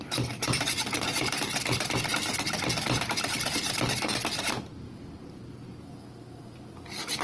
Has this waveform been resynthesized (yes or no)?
no